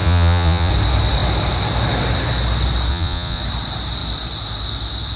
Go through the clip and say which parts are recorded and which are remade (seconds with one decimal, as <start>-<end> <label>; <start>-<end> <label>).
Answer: 0.0-0.7 remade; 0.7-2.9 recorded; 2.9-3.4 remade; 3.4-5.2 recorded